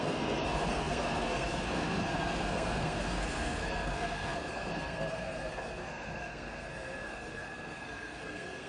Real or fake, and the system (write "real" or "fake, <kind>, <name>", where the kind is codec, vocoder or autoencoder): fake, codec, SNAC